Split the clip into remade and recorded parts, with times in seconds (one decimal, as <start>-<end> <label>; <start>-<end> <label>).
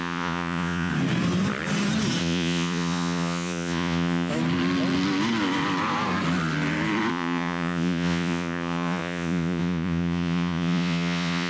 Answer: 0.0-0.9 remade; 0.9-2.2 recorded; 2.2-4.3 remade; 4.3-7.1 recorded; 7.1-11.5 remade